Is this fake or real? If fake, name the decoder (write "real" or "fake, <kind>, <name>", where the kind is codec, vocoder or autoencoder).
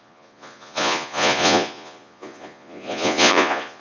fake, vocoder, Vocos